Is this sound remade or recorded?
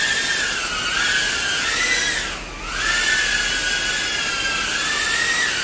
recorded